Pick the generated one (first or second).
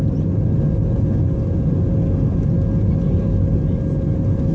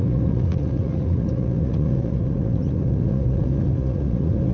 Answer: second